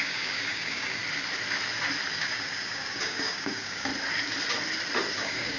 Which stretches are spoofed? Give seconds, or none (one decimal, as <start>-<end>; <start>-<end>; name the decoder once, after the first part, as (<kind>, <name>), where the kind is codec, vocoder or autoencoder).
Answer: 0.0-1.0 (codec, DAC); 2.1-3.9; 5.1-5.6